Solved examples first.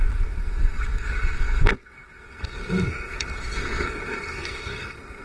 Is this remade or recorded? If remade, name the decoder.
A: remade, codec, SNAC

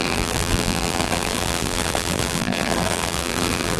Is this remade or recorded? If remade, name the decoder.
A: remade, vocoder, BigVGAN v2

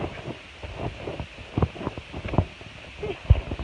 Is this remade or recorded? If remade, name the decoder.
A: recorded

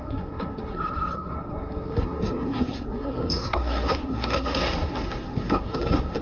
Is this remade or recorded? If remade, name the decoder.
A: remade, codec, SNAC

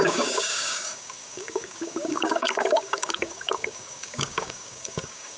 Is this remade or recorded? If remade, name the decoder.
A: remade, codec, DAC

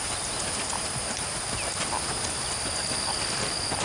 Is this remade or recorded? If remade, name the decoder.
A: recorded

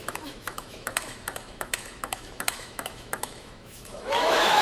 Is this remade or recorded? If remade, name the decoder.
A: remade, autoencoder, DAC-VAE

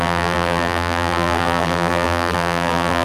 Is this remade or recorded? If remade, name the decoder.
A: remade, vocoder, BigVGAN v2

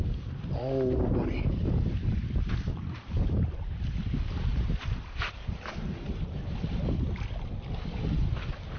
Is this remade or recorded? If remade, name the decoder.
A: recorded